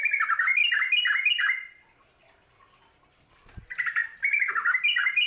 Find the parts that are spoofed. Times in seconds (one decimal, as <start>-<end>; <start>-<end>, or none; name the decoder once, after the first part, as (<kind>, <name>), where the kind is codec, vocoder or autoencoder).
0.6-3.6 (vocoder, BigVGAN v2)